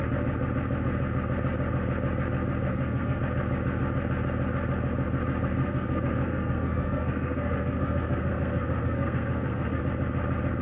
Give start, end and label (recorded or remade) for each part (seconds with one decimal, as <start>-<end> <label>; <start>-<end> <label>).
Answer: 0.0-2.7 recorded; 2.7-3.2 remade; 3.2-5.6 recorded; 5.6-9.8 remade; 9.8-10.6 recorded